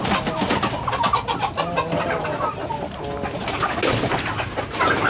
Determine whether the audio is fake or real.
real